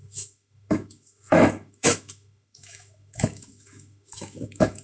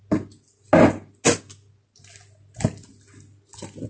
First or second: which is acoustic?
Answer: second